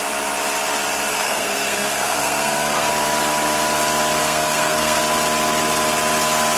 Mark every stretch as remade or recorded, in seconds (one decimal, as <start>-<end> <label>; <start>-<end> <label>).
0.0-1.1 recorded; 1.1-2.9 remade; 2.9-4.2 recorded; 4.2-5.0 remade; 5.0-6.6 recorded